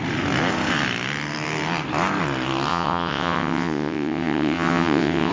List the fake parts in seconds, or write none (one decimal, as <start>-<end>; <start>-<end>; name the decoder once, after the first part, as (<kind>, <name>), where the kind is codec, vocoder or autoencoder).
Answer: 2.7-5.3 (vocoder, WaveNeXt)